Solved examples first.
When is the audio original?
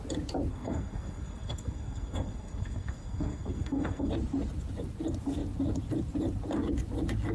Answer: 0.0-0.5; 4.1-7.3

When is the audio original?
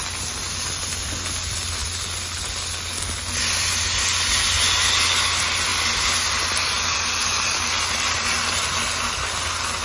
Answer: 0.0-9.8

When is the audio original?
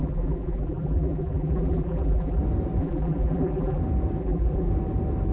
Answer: 2.4-2.8; 3.8-4.2; 4.7-5.3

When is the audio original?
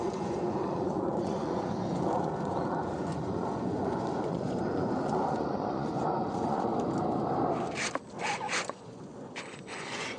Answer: 6.7-8.2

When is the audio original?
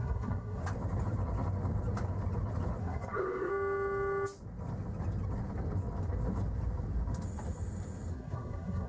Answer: 0.6-2.8; 3.5-8.1